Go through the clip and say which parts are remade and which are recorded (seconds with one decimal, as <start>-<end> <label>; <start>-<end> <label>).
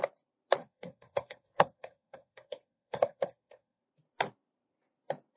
0.0-0.6 recorded; 0.6-3.8 remade; 3.8-5.4 recorded